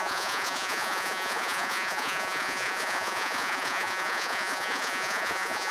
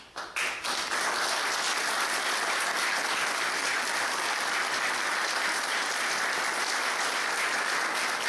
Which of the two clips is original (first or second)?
second